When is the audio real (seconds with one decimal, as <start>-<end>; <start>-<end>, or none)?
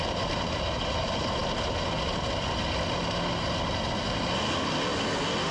0.0-5.5